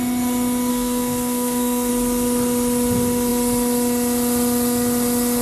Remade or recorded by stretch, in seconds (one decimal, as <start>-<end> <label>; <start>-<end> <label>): 0.0-0.7 recorded; 0.7-1.9 remade; 1.9-5.4 recorded